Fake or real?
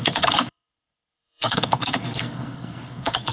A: fake